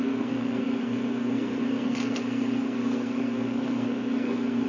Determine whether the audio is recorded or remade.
remade